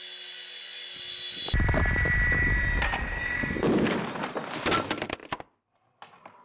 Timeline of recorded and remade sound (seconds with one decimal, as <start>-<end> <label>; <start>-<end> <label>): 0.0-6.4 recorded